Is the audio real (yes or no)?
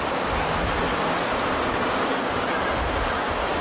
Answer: yes